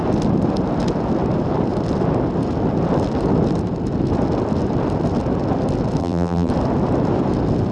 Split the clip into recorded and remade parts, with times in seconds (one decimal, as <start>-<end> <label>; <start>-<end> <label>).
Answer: 0.0-6.0 recorded; 6.0-6.5 remade; 6.5-7.7 recorded